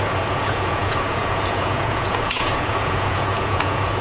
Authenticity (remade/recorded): remade